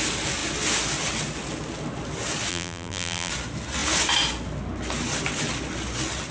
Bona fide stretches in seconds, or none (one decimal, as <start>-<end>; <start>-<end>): 0.0-2.5; 3.3-6.3